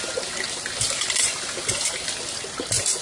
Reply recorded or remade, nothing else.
recorded